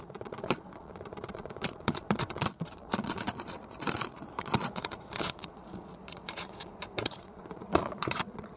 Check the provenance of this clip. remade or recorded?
remade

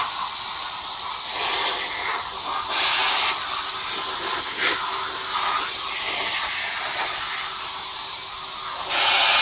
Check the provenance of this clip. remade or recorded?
recorded